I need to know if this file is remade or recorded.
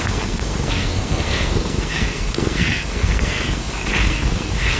remade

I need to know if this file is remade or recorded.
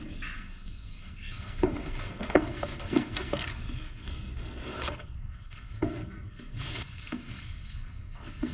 remade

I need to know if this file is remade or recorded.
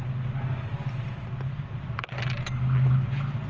recorded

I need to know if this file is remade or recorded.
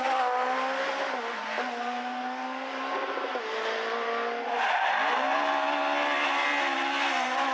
recorded